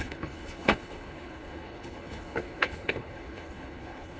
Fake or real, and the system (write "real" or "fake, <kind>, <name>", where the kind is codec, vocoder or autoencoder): fake, codec, HILCodec